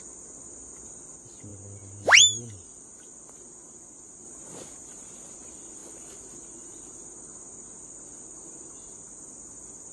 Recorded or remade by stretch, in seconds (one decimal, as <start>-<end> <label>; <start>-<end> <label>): 0.0-9.9 recorded